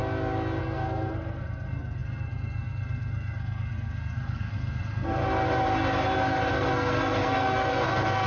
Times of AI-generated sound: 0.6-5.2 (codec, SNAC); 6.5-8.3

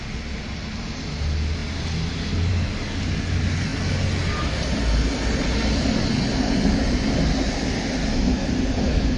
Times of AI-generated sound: none

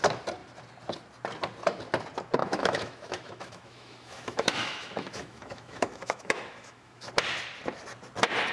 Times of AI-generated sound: 2.4-7.1 (autoencoder, DAC-VAE)

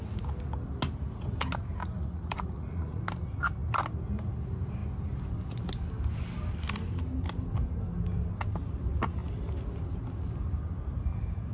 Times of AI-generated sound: 1.8-3.0 (vocoder, Vocos)

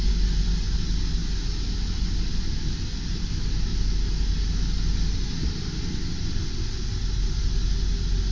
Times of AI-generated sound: none